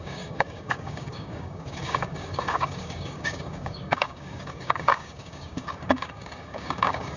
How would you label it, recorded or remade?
remade